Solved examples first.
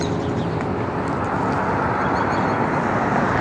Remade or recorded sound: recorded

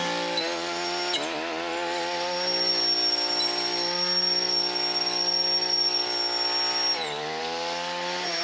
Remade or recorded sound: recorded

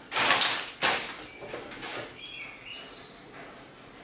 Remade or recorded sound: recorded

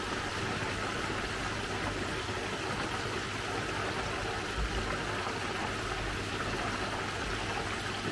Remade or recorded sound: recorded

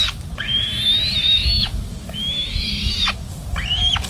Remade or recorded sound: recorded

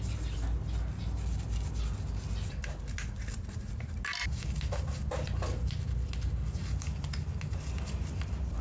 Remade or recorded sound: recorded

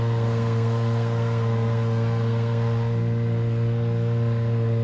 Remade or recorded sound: remade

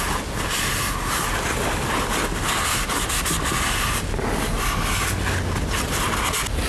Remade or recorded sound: recorded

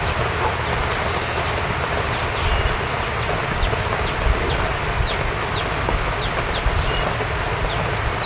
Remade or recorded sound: recorded